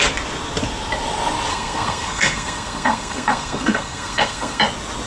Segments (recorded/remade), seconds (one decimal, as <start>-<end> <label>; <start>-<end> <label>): 0.0-1.5 recorded; 1.5-4.6 remade; 4.6-5.1 recorded